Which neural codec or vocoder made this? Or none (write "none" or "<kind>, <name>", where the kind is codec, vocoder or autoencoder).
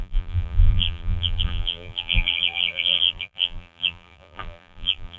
vocoder, BigVGAN v2